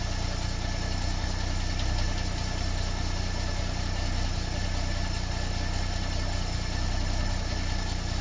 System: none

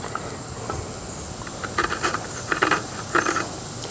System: none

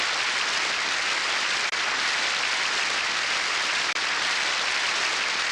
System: none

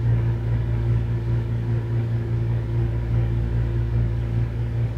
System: codec, DAC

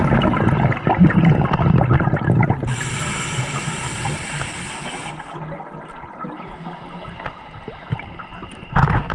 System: none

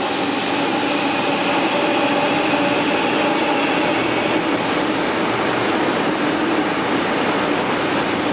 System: none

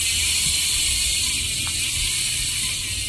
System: none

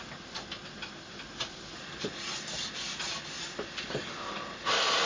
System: none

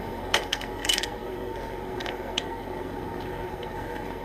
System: codec, SNAC